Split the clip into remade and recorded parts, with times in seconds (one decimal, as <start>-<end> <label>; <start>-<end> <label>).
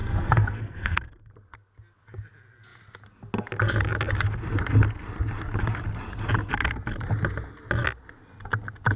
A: 0.0-1.3 remade; 1.3-9.0 recorded